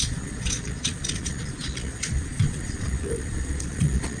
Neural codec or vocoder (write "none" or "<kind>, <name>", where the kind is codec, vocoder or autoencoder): vocoder, Vocos